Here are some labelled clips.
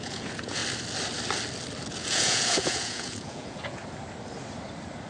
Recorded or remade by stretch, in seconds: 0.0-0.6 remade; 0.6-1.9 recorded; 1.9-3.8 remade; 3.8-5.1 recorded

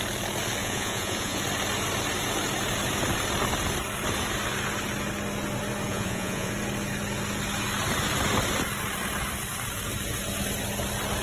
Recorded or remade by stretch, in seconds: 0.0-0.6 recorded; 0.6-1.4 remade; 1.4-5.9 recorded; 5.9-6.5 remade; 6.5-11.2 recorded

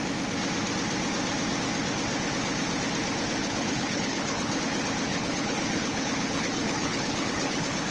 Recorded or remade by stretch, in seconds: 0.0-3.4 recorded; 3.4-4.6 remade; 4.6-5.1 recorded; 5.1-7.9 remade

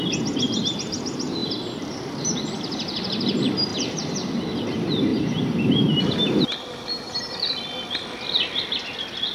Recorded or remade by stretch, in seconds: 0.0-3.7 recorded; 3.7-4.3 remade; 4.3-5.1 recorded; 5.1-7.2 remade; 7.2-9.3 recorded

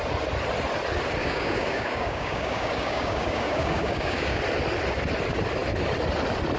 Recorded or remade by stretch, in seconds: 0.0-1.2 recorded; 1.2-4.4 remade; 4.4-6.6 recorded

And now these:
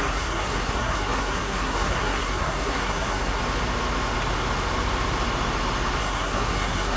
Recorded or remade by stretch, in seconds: 0.0-3.4 remade; 3.4-6.0 recorded; 6.0-7.0 remade

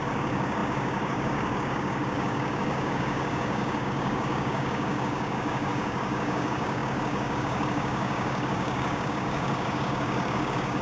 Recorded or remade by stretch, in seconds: 0.0-10.8 remade